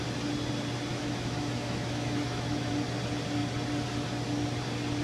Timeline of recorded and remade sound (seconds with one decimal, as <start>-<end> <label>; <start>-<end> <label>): 0.0-0.9 recorded; 0.9-2.7 remade; 2.7-5.0 recorded